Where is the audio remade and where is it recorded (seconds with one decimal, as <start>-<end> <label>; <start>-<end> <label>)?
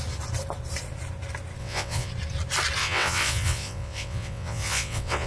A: 0.0-1.6 recorded; 1.6-2.1 remade; 2.1-2.8 recorded; 2.8-5.3 remade